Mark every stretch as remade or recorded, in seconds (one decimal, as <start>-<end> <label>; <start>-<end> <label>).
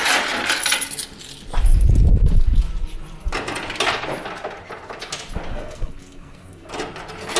0.0-5.5 recorded; 5.5-6.7 remade; 6.7-7.4 recorded